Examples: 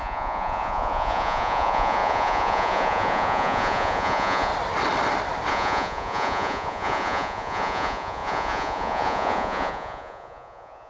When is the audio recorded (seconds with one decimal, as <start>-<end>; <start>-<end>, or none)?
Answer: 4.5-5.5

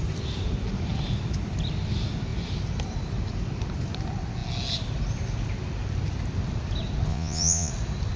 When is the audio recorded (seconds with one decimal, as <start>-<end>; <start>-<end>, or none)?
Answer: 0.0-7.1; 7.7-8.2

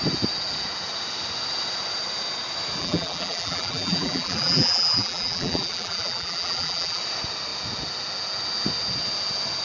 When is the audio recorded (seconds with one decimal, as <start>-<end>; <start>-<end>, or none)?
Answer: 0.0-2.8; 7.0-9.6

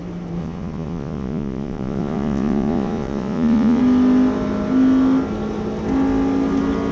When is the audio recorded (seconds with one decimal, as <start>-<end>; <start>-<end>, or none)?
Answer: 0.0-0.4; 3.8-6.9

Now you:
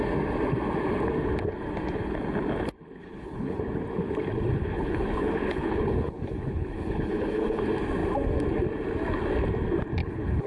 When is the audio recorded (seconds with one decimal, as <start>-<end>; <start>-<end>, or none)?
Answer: 0.0-3.0; 3.6-4.6; 7.6-10.0